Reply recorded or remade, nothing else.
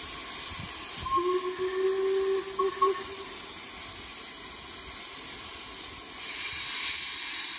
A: recorded